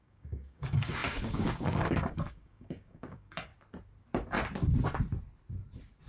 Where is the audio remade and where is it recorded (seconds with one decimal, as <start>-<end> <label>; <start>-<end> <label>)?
0.0-3.5 remade; 3.5-6.1 recorded